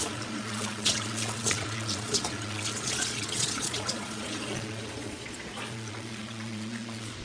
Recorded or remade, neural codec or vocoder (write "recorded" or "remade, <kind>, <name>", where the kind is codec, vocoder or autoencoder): remade, vocoder, Vocos